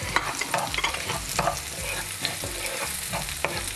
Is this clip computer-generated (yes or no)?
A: no